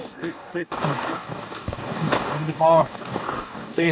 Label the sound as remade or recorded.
remade